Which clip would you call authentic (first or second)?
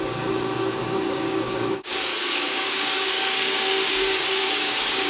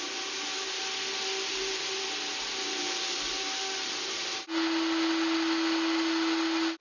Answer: second